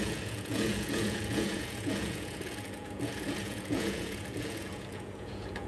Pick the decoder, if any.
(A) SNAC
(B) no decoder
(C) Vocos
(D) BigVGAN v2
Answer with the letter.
C